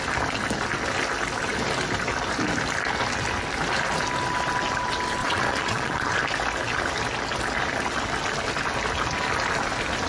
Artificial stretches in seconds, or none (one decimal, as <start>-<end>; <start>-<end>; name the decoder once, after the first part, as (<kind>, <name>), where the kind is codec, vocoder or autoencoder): 5.2-6.2 (vocoder, Vocos)